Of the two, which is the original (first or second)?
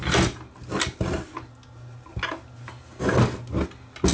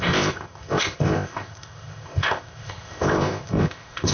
first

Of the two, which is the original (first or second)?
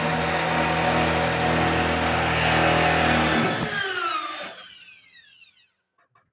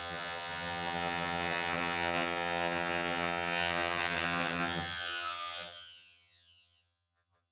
first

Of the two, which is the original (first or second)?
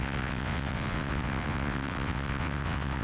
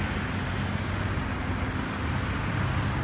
second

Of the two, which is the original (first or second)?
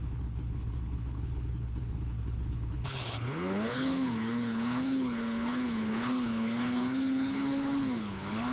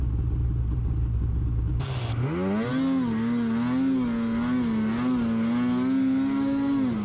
second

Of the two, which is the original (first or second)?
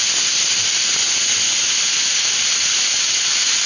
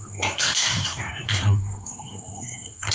first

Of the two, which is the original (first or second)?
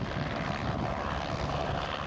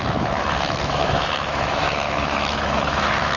first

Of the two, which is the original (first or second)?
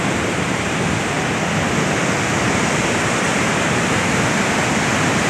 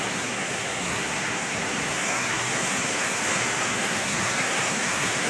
first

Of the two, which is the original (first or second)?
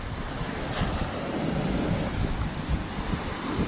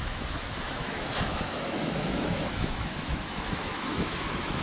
first